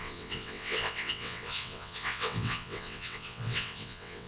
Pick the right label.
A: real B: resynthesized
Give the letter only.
B